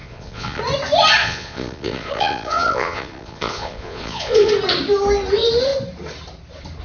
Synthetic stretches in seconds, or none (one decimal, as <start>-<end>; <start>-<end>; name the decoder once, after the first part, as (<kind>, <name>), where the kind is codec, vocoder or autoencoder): 0.0-0.6 (vocoder, Vocos); 1.2-4.5